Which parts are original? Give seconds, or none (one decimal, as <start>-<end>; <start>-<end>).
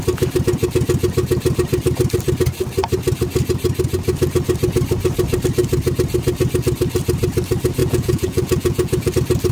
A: 0.0-7.8; 9.1-9.5